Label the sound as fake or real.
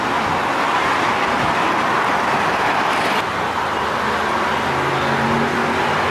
real